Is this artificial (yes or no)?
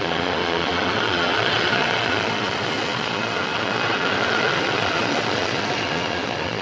yes